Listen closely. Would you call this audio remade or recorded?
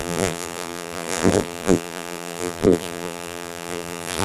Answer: remade